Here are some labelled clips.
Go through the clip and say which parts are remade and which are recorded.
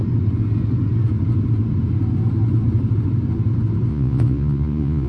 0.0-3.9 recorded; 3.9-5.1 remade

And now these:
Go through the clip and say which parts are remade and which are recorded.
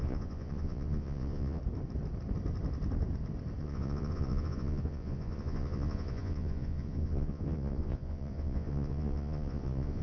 0.0-1.6 remade; 1.6-3.6 recorded; 3.6-10.0 remade